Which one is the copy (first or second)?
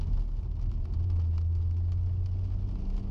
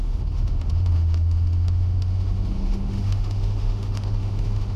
second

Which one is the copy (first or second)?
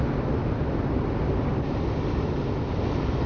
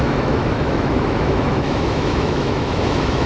second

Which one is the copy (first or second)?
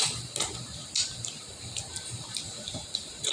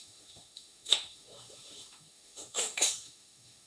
second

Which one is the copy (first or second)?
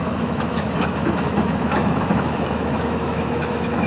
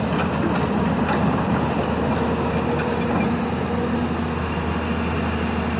first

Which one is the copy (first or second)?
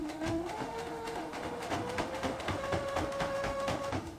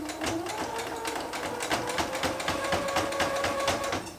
first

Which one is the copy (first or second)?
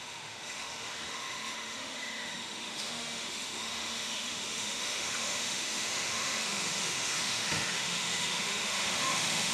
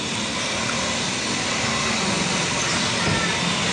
first